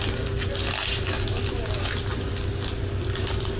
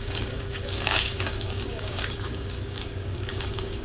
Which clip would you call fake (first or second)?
second